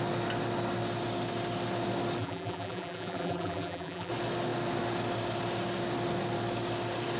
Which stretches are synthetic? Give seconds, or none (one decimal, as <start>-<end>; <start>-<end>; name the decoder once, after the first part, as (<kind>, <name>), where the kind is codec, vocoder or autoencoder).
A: 2.2-4.1 (vocoder, BigVGAN v2)